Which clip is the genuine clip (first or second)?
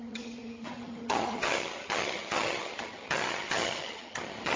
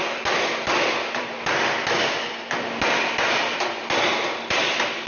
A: second